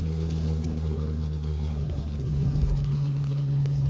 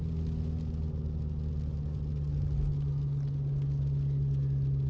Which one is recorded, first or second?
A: second